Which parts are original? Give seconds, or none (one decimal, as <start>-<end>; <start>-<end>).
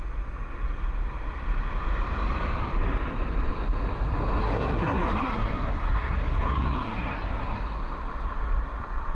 0.0-4.4; 7.6-9.1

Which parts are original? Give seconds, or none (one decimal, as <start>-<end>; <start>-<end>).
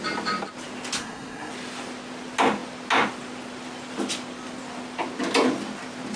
0.0-1.0; 1.5-6.2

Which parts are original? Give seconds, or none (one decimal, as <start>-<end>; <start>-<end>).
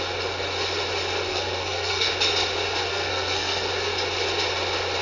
0.0-1.3; 2.1-2.9; 3.7-5.0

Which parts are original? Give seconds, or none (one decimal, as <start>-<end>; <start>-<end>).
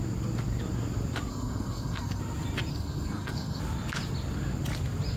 0.0-1.3; 2.2-2.7; 3.6-5.2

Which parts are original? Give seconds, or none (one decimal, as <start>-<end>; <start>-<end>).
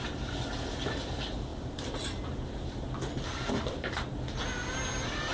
0.0-5.3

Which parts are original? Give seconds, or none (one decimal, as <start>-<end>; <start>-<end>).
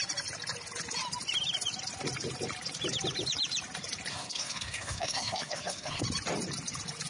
0.0-4.1; 6.0-7.1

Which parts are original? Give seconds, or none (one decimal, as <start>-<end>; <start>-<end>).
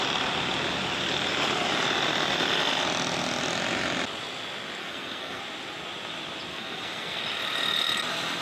0.0-4.8; 5.4-6.5; 7.2-8.4